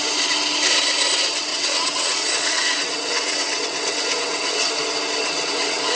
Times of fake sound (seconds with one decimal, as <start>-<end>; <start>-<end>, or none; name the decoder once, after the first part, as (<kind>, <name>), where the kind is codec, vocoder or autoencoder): 1.5-4.7 (vocoder, WaveNeXt); 5.2-6.0